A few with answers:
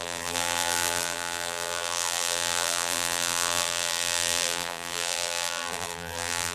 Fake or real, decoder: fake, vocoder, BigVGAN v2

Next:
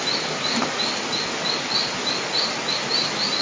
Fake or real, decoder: real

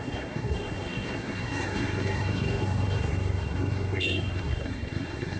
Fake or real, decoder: fake, codec, SNAC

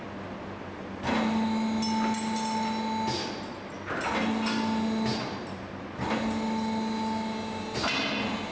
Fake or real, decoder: real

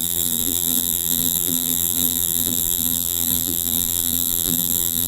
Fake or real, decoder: fake, vocoder, BigVGAN v2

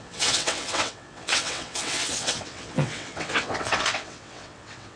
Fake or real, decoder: fake, vocoder, WaveNeXt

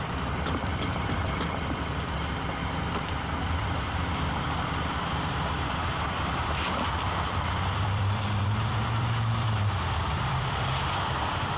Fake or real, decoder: fake, vocoder, BigVGAN v2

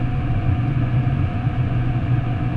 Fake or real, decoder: fake, vocoder, Vocos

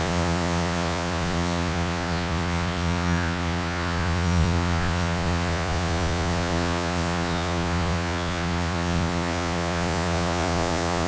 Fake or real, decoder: fake, vocoder, Vocos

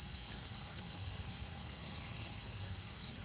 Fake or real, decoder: fake, codec, SNAC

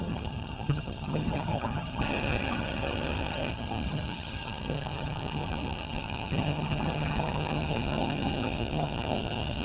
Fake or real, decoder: fake, vocoder, HiFi-GAN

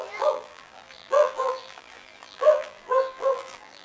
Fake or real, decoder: fake, vocoder, BigVGAN v2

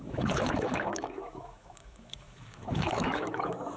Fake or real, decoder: fake, autoencoder, DAC-VAE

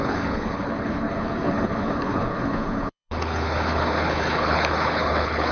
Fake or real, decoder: fake, codec, HILCodec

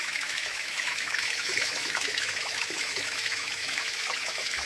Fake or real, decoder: fake, autoencoder, DAC-VAE